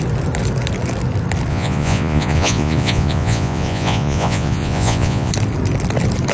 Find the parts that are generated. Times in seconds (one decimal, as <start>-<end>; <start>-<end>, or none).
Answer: 1.5-5.3